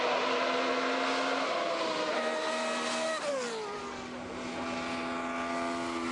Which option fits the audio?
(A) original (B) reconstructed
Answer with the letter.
A